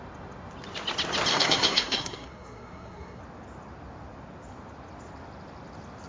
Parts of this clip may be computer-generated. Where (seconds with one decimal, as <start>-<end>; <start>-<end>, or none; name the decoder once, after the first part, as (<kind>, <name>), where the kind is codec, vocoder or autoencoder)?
1.3-3.2 (codec, SNAC)